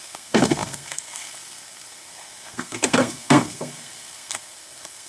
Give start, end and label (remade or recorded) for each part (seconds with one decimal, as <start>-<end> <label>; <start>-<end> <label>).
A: 0.0-5.1 remade

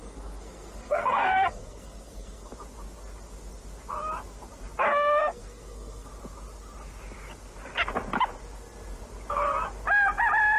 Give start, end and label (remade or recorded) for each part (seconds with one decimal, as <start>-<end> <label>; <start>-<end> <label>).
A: 0.0-2.5 remade; 2.5-4.9 recorded; 4.9-6.1 remade; 6.1-10.6 recorded

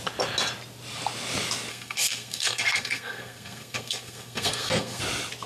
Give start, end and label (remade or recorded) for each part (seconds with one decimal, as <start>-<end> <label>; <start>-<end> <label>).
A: 0.0-1.7 recorded; 1.7-5.0 remade; 5.0-5.5 recorded

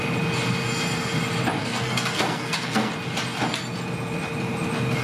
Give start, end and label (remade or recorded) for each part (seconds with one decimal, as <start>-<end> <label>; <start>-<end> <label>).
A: 0.0-1.6 recorded; 1.6-2.9 remade; 2.9-5.0 recorded

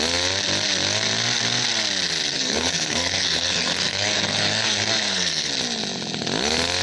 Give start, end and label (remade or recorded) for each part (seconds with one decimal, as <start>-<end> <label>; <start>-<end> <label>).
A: 0.0-2.3 recorded; 2.3-5.5 remade; 5.5-6.8 recorded

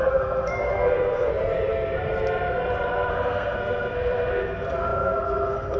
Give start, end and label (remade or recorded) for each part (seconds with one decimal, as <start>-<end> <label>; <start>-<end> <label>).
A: 0.0-1.3 remade; 1.3-3.1 recorded; 3.1-5.8 remade

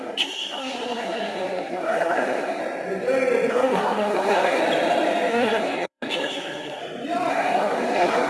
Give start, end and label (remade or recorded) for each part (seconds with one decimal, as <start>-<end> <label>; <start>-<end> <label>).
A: 0.0-2.6 remade; 2.6-3.5 recorded; 3.5-4.6 remade; 4.6-5.3 recorded; 5.3-6.8 remade; 6.8-7.3 recorded; 7.3-8.3 remade

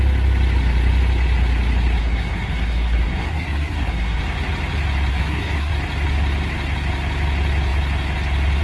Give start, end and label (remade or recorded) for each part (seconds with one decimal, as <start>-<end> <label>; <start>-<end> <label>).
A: 0.0-2.0 recorded; 2.0-4.2 remade; 4.2-5.1 recorded; 5.1-5.7 remade; 5.7-8.6 recorded